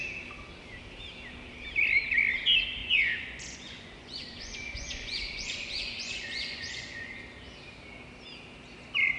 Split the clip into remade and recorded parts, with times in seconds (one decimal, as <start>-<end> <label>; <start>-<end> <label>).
0.0-2.8 recorded; 2.8-7.2 remade; 7.2-9.2 recorded